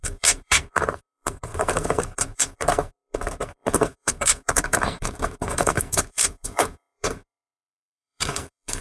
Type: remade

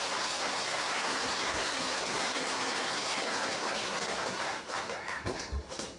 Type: remade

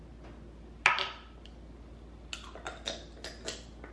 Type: recorded